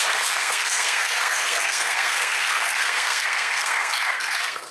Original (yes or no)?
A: no